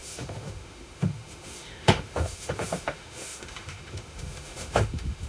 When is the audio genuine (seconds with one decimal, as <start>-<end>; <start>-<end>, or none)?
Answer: none